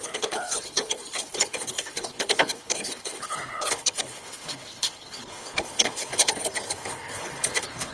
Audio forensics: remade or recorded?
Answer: remade